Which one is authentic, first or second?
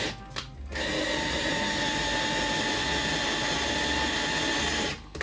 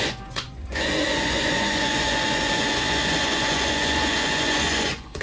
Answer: first